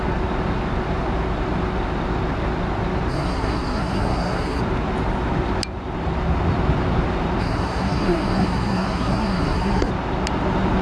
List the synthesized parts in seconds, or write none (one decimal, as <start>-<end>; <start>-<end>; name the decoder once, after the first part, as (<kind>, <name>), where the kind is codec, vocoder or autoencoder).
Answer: 3.1-4.6 (codec, SNAC); 7.4-9.9